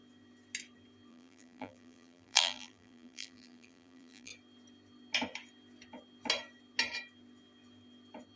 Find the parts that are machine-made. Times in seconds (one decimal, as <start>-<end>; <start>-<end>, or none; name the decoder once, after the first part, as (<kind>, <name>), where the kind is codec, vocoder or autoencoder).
1.1-4.3 (vocoder, BigVGAN v2)